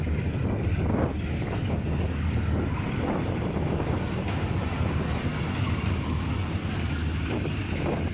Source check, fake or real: real